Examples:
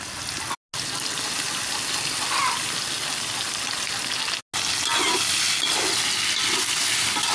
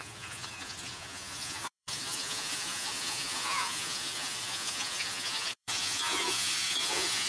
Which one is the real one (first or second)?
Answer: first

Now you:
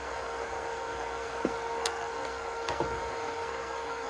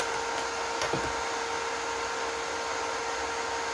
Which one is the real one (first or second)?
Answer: second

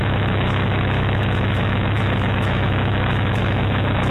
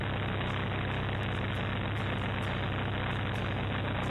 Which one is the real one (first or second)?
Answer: second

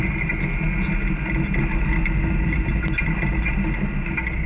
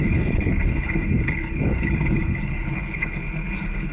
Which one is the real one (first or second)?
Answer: first